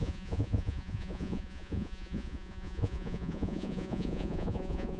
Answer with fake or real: fake